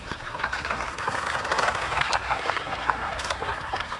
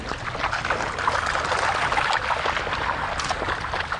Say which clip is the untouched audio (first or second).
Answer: second